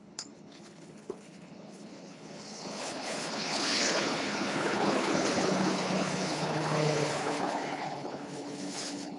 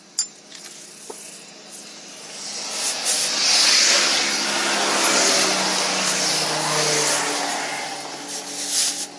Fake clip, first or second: first